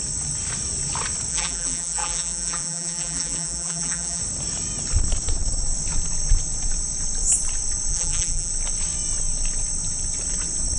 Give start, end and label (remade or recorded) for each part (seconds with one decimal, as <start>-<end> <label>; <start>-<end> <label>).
0.0-1.3 recorded; 1.3-4.2 remade; 4.2-7.9 recorded; 7.9-8.5 remade; 8.5-10.8 recorded